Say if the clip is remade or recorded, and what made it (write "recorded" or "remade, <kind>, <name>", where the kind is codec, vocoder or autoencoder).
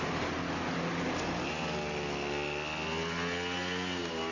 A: recorded